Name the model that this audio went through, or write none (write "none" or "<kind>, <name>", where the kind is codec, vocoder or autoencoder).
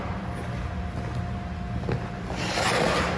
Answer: none